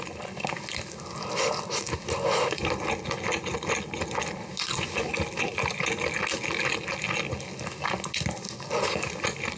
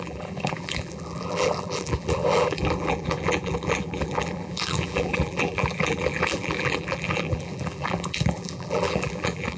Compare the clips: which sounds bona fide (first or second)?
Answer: first